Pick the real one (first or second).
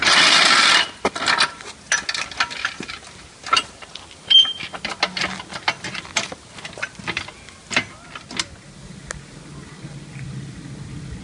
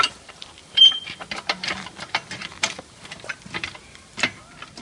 first